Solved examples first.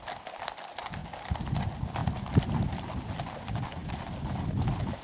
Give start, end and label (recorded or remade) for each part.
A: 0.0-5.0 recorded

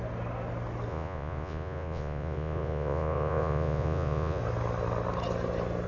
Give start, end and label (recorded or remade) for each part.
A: 0.0-0.9 recorded; 0.9-4.4 remade; 4.4-5.9 recorded

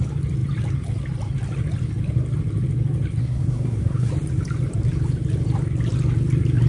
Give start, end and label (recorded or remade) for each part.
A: 0.0-3.2 recorded; 3.2-4.1 remade; 4.1-6.7 recorded

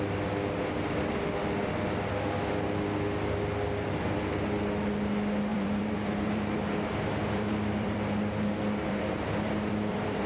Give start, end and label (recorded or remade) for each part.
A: 0.0-5.5 recorded; 5.5-10.3 remade

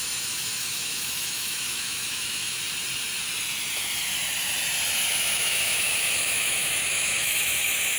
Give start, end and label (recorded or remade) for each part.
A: 0.0-2.6 remade; 2.6-5.1 recorded; 5.1-8.0 remade

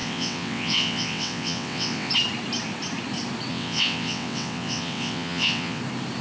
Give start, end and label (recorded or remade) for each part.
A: 0.0-2.1 remade; 2.1-3.5 recorded; 3.5-5.8 remade; 5.8-6.2 recorded

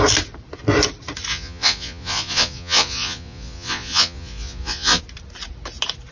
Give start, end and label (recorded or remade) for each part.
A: 0.0-1.3 recorded; 1.3-5.0 remade; 5.0-6.1 recorded

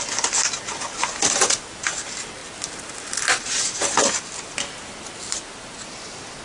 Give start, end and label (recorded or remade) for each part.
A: 0.0-6.4 recorded